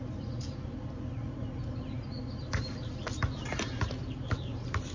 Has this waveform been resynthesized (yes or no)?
no